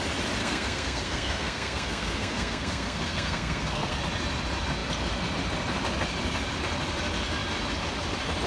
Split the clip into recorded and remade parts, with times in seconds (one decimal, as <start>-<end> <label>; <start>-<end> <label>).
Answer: 0.0-0.4 recorded; 0.4-4.0 remade; 4.0-8.5 recorded